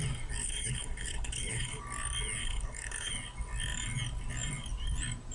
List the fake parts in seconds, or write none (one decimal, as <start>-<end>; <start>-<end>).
0.4-1.8; 2.4-3.1